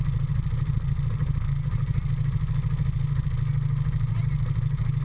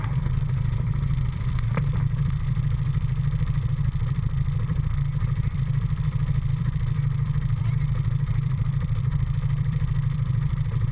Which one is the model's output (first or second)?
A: second